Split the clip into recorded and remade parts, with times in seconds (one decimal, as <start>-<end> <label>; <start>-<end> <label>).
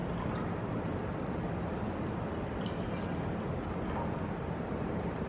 0.0-0.6 recorded; 0.6-1.1 remade; 1.1-4.3 recorded; 4.3-5.3 remade